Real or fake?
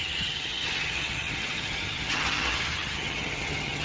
fake